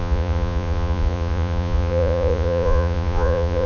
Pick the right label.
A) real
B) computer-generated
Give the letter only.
B